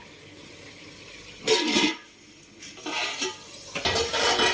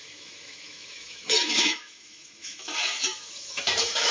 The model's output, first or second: second